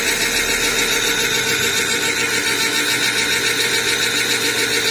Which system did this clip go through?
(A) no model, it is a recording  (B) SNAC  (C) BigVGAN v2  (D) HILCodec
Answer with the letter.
A